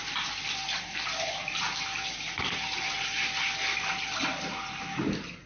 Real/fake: real